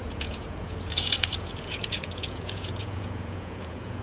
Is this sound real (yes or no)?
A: no